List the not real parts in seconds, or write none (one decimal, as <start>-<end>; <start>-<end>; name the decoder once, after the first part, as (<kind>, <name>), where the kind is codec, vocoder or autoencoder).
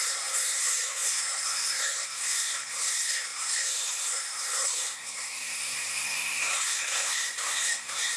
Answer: 0.0-8.2 (codec, SNAC)